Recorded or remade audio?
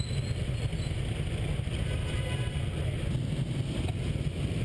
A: recorded